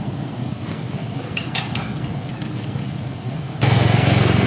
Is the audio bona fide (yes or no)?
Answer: no